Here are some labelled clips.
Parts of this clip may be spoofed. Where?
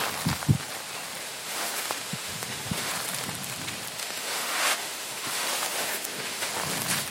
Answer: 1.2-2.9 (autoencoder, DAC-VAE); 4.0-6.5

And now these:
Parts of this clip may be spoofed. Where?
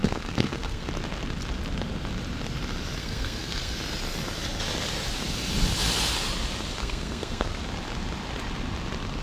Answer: 0.0-0.9 (codec, SNAC); 3.0-3.7; 6.8-7.6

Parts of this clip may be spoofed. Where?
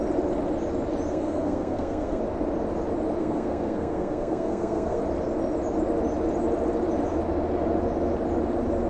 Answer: 1.1-2.2 (codec, SNAC); 3.2-5.0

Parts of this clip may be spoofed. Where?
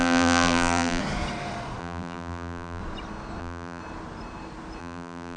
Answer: 0.0-1.0 (vocoder, BigVGAN v2); 1.8-2.8; 3.4-3.8; 4.8-5.4